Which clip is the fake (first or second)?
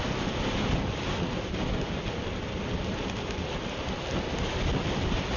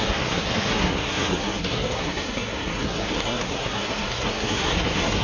second